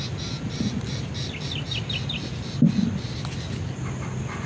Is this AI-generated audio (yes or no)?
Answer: no